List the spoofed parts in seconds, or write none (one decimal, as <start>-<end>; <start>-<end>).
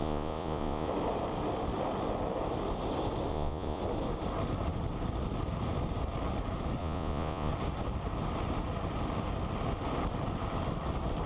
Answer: 0.0-0.9; 3.3-3.8; 6.8-7.5